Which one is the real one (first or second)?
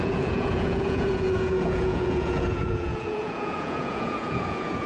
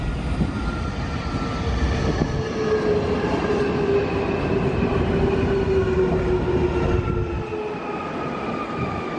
second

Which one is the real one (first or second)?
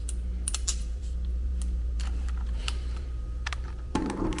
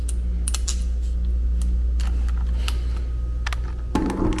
second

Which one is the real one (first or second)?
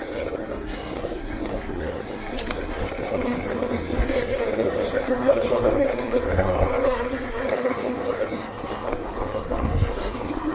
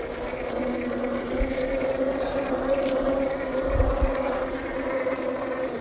second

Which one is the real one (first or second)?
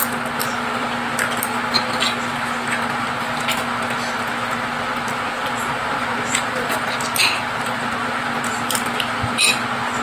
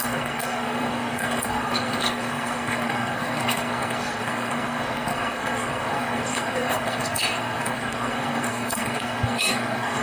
first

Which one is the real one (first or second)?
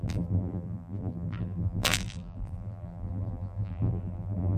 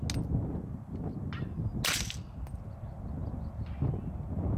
second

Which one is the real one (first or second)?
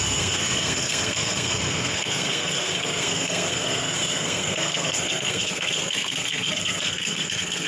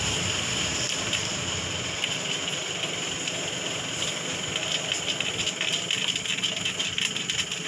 second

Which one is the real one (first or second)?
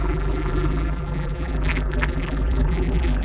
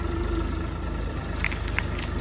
second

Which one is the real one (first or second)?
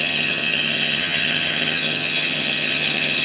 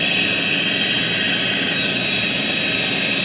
second